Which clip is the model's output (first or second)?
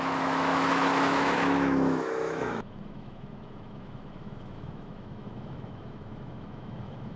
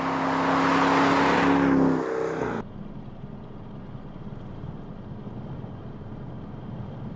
first